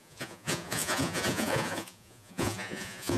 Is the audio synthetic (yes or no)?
yes